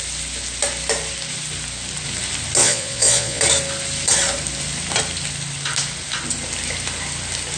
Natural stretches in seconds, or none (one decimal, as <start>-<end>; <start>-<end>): 0.0-2.6; 3.4-7.6